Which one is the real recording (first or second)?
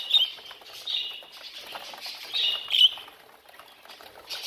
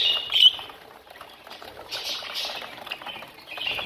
first